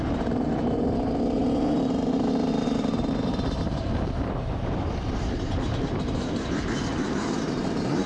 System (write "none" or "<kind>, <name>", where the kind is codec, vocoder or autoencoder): vocoder, BigVGAN v2